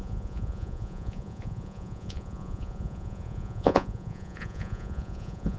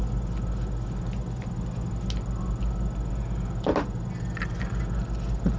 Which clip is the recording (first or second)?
second